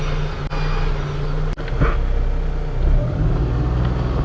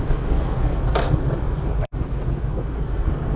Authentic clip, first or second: first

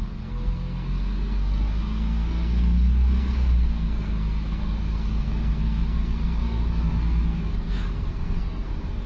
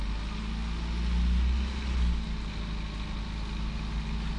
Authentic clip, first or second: second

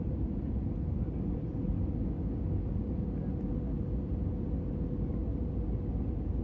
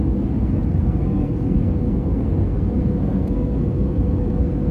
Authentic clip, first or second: first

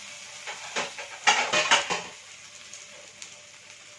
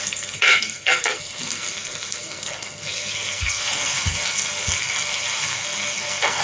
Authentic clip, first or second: first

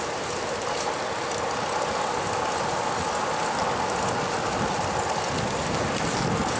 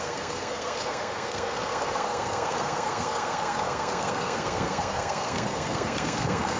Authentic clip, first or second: first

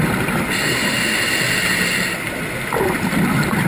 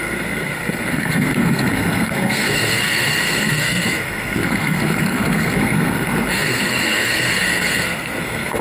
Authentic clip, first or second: first